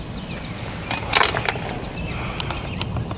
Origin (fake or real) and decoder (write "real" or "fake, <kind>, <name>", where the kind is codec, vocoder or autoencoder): real